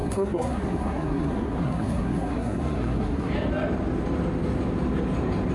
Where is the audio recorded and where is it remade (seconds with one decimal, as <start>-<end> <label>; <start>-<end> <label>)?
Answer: 0.0-3.3 remade; 3.3-5.5 recorded